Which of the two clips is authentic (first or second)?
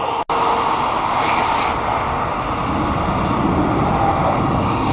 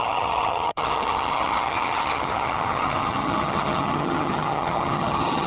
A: first